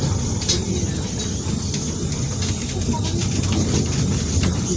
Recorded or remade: recorded